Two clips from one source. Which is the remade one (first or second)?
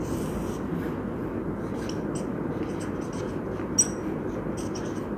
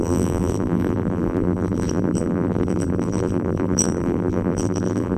second